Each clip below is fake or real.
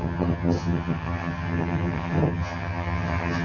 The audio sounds fake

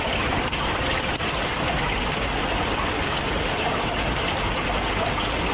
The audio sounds real